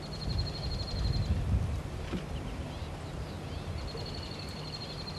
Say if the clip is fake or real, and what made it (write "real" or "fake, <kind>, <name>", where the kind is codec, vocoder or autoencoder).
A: real